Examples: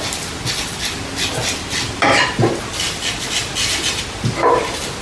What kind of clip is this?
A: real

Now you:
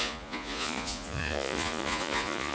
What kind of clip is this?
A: fake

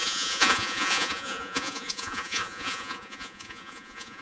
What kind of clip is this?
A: fake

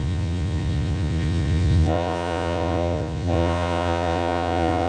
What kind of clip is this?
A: fake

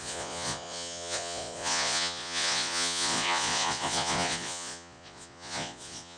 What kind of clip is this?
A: fake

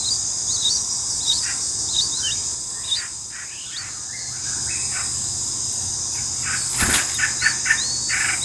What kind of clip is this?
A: real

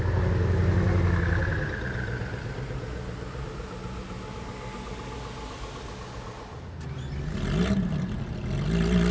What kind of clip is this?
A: real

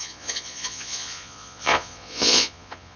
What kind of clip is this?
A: fake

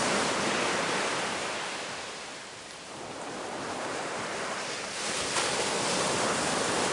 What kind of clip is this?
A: real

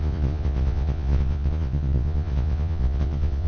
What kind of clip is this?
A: fake